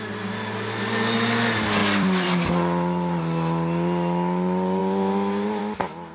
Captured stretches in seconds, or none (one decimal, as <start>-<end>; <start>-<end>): 0.0-1.8; 2.5-6.1